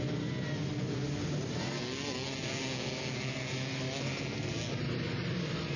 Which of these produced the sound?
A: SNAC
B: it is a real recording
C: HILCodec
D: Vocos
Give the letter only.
B